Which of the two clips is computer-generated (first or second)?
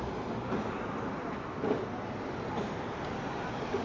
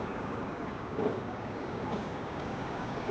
second